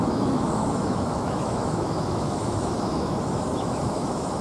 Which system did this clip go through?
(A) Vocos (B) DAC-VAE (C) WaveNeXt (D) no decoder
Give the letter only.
B